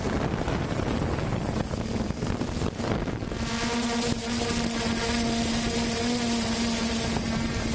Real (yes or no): yes